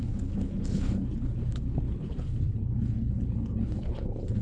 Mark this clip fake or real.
fake